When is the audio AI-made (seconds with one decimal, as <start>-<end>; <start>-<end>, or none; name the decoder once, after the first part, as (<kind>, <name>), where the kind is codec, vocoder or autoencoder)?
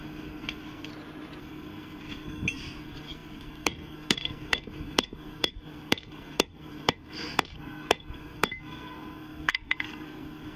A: 0.0-0.9 (codec, SNAC); 1.4-10.6